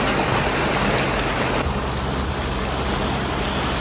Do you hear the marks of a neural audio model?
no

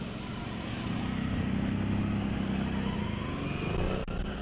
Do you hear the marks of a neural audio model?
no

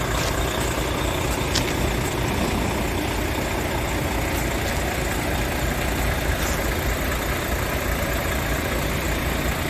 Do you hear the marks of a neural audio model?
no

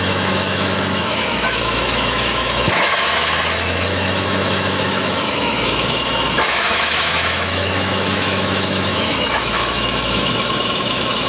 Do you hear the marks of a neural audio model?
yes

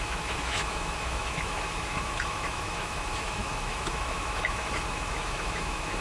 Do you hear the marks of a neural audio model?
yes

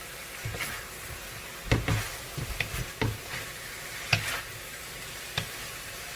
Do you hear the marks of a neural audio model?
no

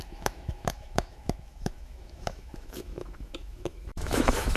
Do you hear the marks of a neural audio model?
yes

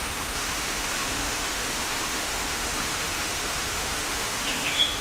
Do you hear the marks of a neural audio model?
yes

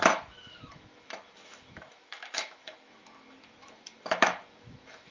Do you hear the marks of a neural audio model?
yes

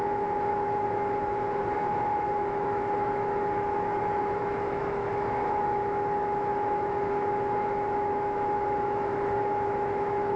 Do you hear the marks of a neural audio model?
yes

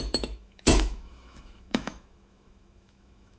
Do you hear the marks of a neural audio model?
yes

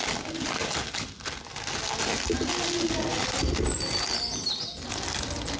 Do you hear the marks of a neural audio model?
no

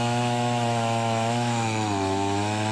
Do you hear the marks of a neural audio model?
yes